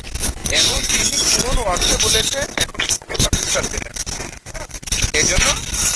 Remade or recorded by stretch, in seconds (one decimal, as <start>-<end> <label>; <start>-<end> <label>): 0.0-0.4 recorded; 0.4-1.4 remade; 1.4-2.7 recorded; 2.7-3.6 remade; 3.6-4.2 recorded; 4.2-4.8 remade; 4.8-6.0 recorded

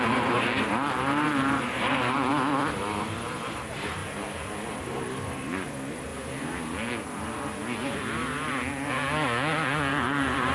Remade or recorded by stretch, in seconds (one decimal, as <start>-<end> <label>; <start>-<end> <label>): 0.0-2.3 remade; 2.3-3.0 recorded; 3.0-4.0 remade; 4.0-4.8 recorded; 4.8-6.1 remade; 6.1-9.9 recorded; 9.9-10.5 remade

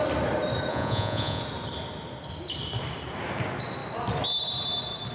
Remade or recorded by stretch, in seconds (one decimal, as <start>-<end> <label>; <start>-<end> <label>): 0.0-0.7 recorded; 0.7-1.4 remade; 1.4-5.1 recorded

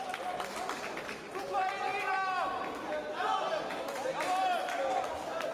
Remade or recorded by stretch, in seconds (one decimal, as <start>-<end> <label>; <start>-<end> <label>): 0.0-5.5 recorded

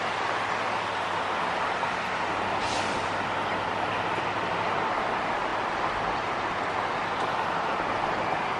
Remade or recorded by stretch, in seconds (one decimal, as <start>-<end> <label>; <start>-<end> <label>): 0.0-8.6 recorded

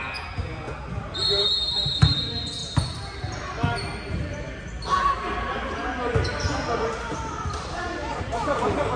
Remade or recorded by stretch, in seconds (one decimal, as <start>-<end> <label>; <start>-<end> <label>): 0.0-9.0 recorded